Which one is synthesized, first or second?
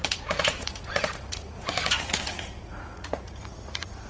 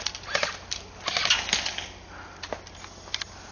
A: first